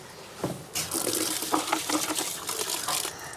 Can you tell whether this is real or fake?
real